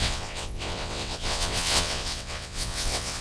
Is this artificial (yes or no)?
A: yes